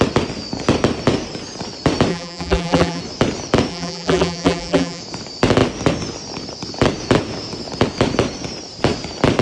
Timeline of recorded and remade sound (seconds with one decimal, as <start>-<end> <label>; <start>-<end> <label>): 0.0-2.1 recorded; 2.1-3.0 remade; 3.0-3.7 recorded; 3.7-5.0 remade; 5.0-9.4 recorded